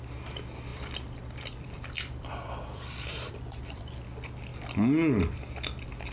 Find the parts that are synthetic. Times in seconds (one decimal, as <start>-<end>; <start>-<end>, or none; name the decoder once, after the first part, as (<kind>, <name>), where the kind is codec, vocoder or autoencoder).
0.7-3.9 (vocoder, BigVGAN v2)